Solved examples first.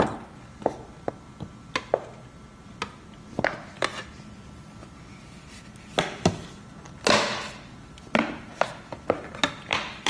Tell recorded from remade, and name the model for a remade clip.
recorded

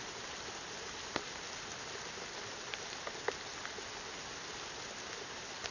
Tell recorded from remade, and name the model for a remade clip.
recorded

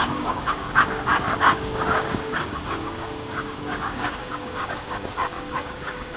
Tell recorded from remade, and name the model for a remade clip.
remade, codec, DAC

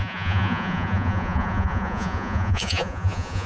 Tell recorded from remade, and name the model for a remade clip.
remade, vocoder, Vocos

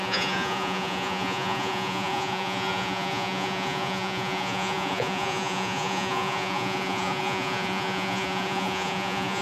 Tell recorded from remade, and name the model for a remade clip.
remade, vocoder, Vocos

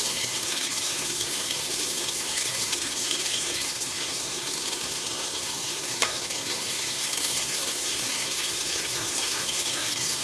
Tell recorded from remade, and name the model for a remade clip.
remade, codec, SNAC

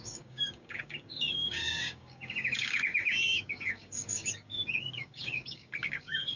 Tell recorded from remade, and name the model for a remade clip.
remade, codec, DAC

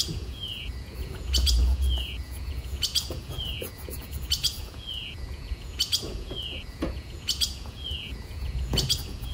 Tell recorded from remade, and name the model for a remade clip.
remade, vocoder, Vocos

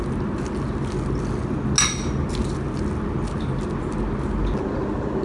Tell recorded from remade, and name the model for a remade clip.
recorded